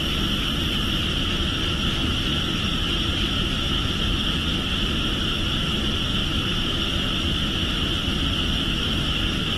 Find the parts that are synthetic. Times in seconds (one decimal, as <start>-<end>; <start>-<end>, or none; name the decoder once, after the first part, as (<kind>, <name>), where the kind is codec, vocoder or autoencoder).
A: 2.0-3.5 (vocoder, BigVGAN v2); 6.2-6.8